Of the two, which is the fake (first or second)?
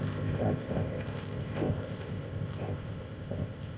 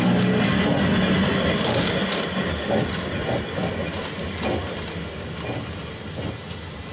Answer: first